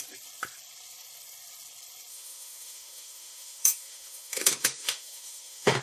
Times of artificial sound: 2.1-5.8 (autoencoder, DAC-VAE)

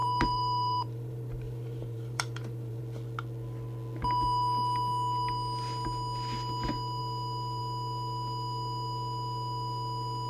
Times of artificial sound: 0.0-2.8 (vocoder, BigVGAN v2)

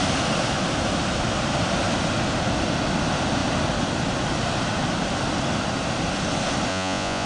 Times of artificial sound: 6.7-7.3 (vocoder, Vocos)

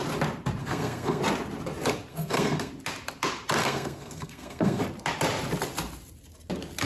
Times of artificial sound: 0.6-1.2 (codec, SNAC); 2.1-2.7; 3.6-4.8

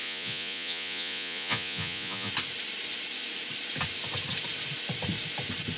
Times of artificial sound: 0.0-2.3 (vocoder, Vocos)